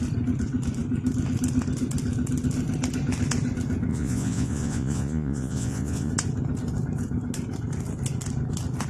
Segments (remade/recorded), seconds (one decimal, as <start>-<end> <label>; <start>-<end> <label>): 0.0-3.9 recorded; 3.9-6.1 remade; 6.1-8.9 recorded